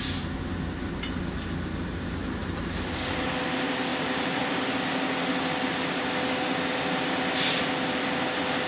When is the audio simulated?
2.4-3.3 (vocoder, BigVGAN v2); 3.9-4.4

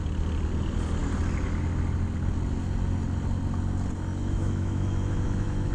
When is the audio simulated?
4.2-5.7 (autoencoder, DAC-VAE)